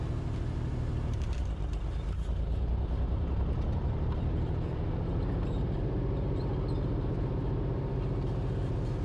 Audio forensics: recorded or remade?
remade